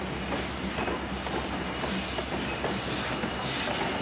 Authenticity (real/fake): real